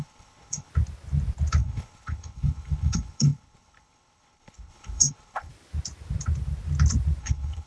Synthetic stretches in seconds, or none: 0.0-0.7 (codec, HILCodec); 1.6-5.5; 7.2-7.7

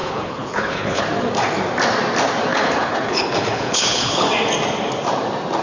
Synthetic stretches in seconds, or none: 0.0-1.0 (codec, HILCodec); 2.5-4.3

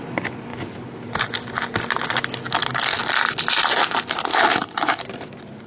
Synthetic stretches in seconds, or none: 4.3-5.0 (codec, HILCodec)

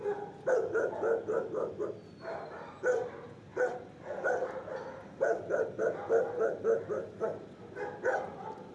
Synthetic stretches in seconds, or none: none

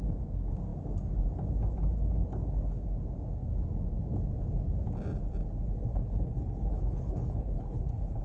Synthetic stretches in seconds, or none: 5.9-8.2 (codec, HILCodec)